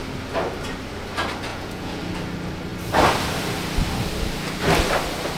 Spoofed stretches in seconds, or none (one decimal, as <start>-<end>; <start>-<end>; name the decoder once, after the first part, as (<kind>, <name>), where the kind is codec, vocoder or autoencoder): 1.5-2.0 (vocoder, Vocos)